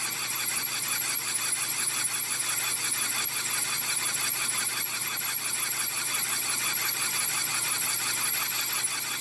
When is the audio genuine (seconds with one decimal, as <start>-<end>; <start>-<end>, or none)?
0.0-9.2